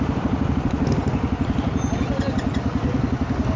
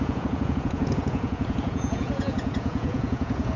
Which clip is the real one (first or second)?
first